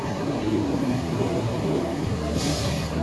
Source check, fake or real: fake